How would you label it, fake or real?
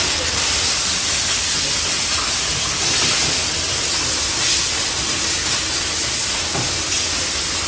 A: real